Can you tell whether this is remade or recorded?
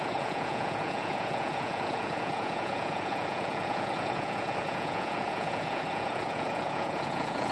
remade